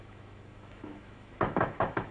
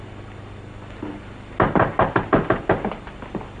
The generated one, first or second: first